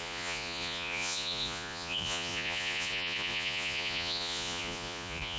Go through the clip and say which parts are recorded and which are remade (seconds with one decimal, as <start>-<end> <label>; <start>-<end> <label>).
0.0-5.4 remade